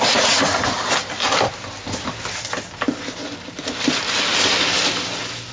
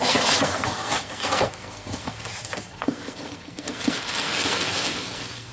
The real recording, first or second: first